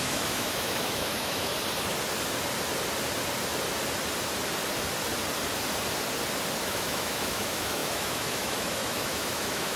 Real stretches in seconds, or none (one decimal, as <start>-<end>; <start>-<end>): 1.5-6.6